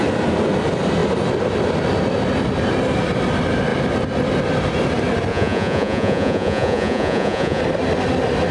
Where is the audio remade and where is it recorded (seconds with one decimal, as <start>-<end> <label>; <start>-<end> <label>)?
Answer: 0.0-5.3 recorded; 5.3-7.6 remade; 7.6-8.5 recorded